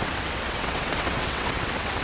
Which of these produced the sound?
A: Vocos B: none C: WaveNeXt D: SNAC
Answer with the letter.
C